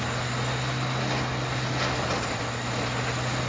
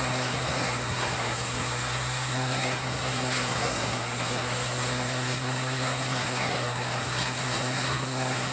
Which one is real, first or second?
first